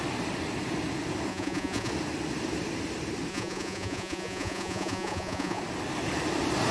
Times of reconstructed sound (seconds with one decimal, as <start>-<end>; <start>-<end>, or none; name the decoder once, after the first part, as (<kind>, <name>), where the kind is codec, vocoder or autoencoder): 1.3-1.9 (vocoder, Vocos); 3.3-5.6